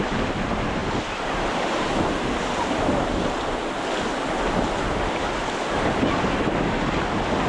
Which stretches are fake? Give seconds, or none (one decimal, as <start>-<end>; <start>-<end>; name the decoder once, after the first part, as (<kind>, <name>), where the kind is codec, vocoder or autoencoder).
none